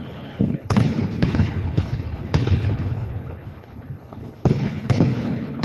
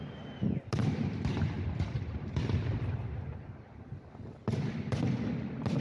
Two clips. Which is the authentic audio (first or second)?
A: second